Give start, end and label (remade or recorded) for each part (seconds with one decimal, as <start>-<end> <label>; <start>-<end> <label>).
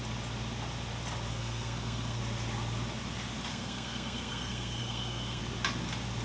0.0-1.3 recorded; 1.3-2.2 remade; 2.2-3.5 recorded; 3.5-5.4 remade; 5.4-6.2 recorded